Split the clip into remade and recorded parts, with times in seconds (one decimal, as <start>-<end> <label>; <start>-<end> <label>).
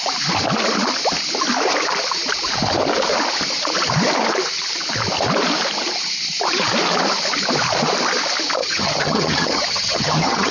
0.0-8.6 recorded; 8.6-10.5 remade